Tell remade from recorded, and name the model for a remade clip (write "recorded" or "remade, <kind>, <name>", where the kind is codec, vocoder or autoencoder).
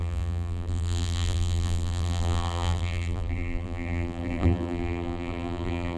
remade, vocoder, BigVGAN v2